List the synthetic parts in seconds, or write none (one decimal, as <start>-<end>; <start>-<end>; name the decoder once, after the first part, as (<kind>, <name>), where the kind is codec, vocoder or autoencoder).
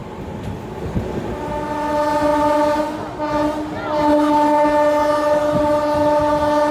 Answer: none